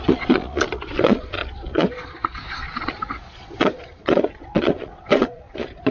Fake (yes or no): yes